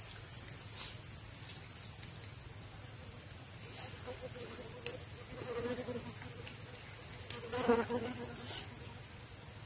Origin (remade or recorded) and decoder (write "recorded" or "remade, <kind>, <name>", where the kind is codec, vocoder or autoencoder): recorded